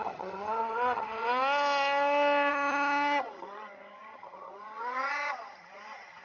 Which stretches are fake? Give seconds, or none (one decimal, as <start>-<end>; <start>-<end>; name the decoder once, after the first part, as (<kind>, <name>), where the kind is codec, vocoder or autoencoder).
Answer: 0.0-1.4 (vocoder, HiFi-GAN); 2.5-6.2